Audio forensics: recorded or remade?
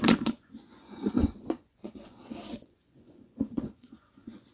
remade